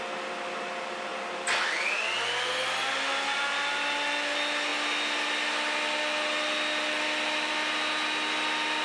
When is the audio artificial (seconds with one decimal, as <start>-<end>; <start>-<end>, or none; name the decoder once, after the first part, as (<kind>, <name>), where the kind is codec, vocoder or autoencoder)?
none